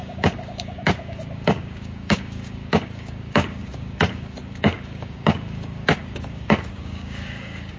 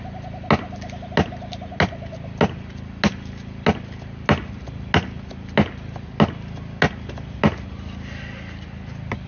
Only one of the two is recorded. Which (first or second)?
second